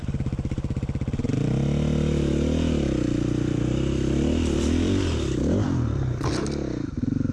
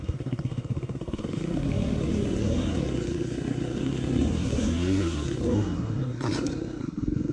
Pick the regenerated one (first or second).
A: second